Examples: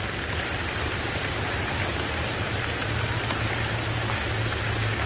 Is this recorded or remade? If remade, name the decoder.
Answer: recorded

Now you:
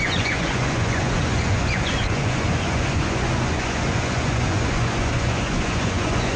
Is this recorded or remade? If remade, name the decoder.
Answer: remade, vocoder, Vocos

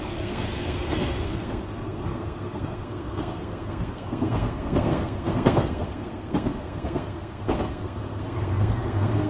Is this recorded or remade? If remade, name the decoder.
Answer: remade, codec, SNAC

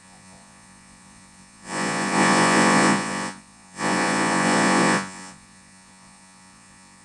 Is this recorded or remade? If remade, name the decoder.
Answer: remade, vocoder, Vocos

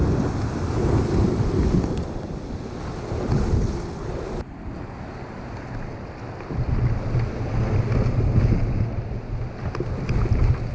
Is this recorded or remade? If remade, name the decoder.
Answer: recorded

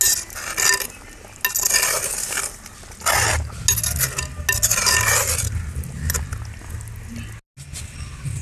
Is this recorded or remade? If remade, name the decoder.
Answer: recorded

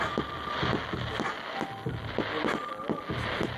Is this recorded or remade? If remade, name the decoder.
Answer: recorded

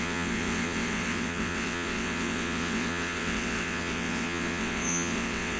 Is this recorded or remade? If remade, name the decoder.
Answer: remade, vocoder, WaveNeXt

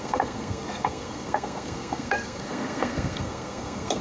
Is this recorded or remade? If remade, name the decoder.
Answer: remade, codec, SNAC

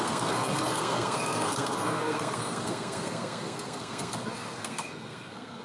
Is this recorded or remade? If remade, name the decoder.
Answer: remade, codec, SNAC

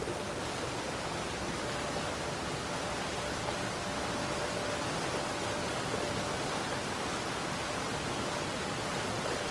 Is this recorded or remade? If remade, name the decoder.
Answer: recorded